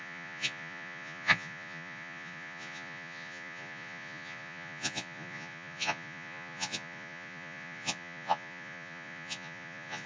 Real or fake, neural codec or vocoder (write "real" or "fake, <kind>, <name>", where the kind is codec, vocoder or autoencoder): fake, vocoder, Vocos